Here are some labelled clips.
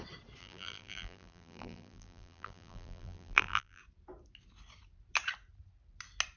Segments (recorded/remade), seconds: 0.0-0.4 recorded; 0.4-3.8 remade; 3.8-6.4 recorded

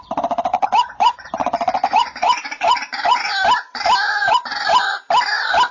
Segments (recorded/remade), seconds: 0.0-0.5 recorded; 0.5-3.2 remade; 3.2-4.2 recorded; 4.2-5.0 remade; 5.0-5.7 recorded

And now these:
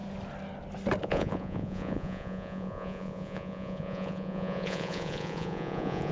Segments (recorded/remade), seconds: 0.0-1.0 recorded; 1.0-6.1 remade